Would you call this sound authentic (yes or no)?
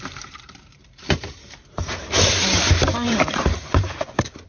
no